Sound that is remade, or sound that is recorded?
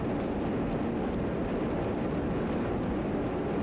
recorded